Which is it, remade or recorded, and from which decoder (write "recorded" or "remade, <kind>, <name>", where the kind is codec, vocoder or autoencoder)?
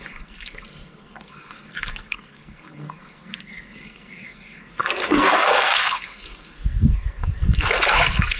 remade, codec, SNAC